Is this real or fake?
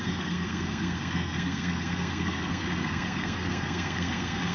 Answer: fake